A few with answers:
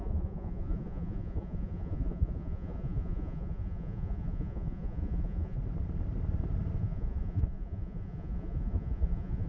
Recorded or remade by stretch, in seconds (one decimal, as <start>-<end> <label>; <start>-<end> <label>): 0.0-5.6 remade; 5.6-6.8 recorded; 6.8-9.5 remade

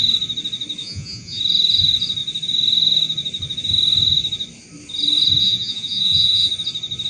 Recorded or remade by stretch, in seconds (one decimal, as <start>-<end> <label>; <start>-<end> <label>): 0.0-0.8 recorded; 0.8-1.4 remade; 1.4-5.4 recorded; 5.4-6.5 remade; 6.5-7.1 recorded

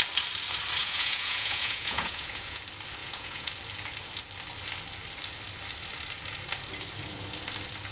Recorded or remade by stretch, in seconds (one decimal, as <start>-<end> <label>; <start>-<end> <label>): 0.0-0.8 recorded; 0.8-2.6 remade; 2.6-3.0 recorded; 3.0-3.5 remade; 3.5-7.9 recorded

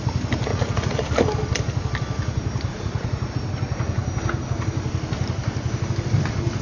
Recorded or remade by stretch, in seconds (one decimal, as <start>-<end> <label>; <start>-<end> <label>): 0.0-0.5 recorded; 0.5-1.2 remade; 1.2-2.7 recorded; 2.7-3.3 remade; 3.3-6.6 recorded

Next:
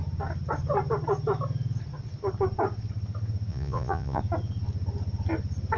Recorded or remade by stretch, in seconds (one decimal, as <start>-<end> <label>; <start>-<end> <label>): 0.0-3.5 recorded; 3.5-4.2 remade; 4.2-5.8 recorded